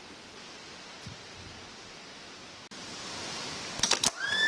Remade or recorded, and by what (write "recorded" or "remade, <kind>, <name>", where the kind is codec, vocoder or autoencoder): recorded